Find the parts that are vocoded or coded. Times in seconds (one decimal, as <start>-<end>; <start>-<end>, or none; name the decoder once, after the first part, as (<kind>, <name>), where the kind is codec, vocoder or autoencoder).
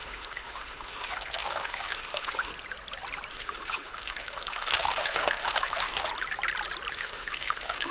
0.0-2.5 (autoencoder, DAC-VAE); 3.3-6.1; 6.9-7.9